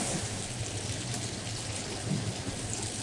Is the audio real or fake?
real